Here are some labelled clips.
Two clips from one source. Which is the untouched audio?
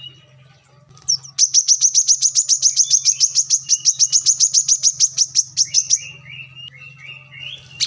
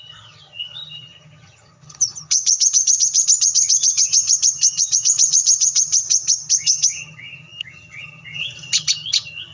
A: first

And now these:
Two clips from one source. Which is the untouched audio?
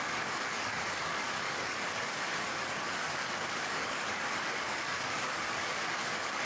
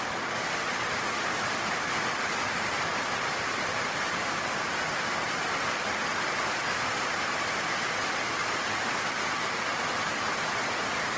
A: second